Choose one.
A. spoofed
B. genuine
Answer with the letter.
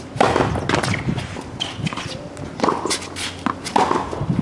B